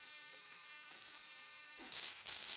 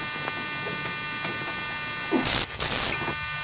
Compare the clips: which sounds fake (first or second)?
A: first